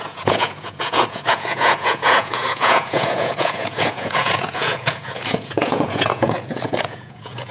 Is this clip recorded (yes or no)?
no